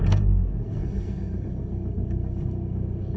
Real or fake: fake